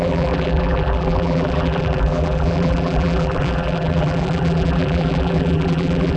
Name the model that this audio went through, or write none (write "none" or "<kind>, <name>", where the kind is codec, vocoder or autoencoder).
vocoder, BigVGAN v2